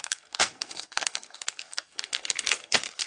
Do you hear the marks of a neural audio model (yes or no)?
yes